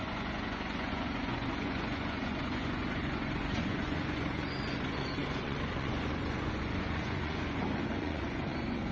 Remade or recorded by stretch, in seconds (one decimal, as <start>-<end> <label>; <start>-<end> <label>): 0.0-8.9 remade